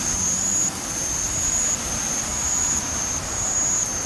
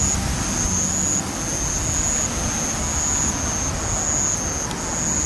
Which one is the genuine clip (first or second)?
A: second